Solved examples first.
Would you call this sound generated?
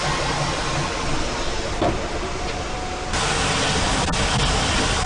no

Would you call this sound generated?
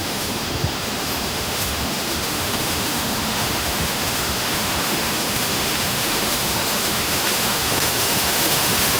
yes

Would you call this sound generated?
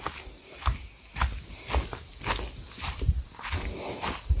no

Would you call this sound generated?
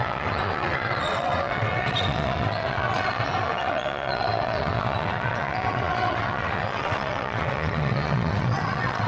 yes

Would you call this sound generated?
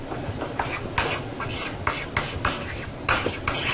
no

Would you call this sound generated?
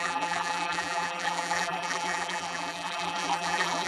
yes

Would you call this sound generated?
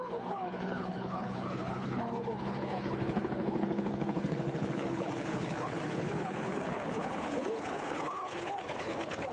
yes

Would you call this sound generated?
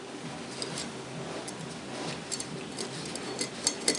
no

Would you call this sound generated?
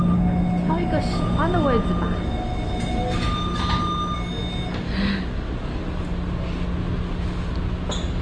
no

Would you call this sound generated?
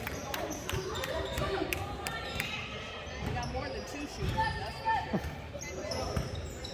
yes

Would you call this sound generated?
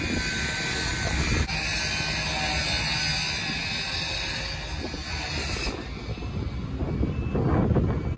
no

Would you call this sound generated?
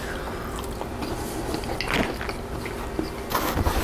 no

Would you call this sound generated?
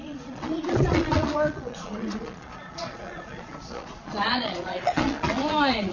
yes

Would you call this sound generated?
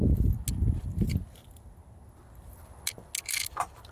no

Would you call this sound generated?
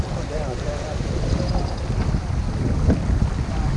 no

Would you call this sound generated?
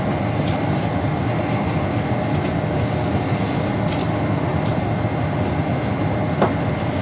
no